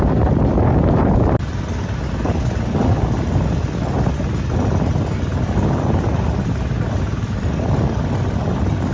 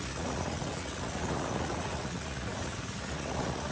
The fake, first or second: second